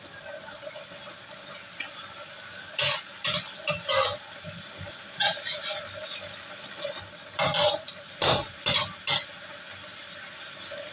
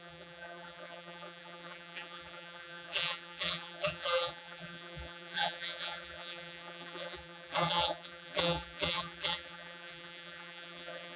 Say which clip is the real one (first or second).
first